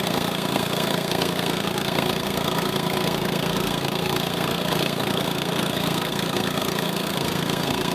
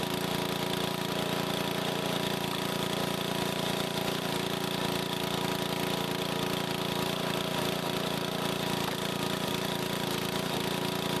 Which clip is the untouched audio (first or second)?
second